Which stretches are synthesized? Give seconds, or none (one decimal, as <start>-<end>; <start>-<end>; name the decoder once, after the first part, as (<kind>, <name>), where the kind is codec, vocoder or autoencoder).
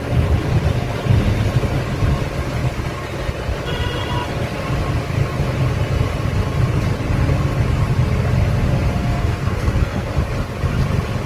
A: 9.0-10.1 (codec, SNAC)